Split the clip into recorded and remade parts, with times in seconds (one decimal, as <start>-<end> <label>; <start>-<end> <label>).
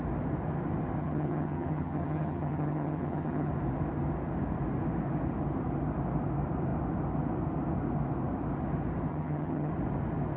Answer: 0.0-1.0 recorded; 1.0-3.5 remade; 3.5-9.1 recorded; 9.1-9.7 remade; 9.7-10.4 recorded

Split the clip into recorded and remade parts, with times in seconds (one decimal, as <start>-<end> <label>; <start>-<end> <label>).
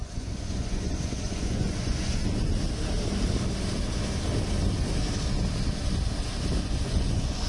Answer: 0.0-2.2 remade; 2.2-6.6 recorded; 6.6-7.5 remade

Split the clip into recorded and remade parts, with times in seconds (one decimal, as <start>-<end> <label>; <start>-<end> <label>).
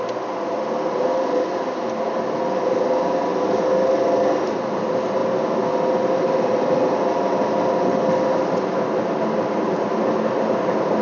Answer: 0.0-11.0 recorded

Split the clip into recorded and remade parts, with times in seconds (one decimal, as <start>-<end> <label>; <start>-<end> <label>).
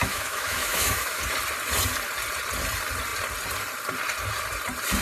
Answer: 0.0-1.2 remade; 1.2-5.0 recorded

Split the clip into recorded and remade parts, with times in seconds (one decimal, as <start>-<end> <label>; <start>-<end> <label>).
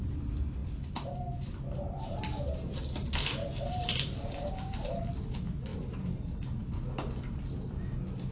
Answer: 0.0-3.4 recorded; 3.4-5.1 remade; 5.1-5.7 recorded; 5.7-6.6 remade; 6.6-8.3 recorded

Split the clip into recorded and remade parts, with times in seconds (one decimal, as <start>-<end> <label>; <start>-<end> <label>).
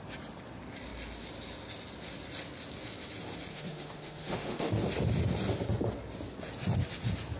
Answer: 0.0-3.5 recorded; 3.5-4.8 remade; 4.8-7.4 recorded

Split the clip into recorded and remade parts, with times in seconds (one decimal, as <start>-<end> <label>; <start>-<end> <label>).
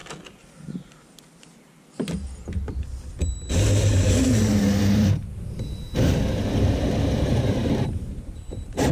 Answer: 0.0-4.8 recorded; 4.8-8.9 remade